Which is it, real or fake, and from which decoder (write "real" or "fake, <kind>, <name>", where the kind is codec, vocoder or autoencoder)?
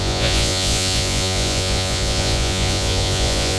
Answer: fake, vocoder, Vocos